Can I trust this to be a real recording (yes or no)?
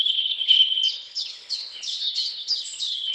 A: no